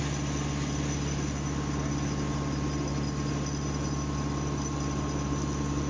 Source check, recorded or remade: recorded